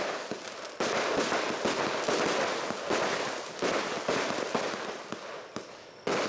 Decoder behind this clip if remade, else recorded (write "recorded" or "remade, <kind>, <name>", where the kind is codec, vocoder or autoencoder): recorded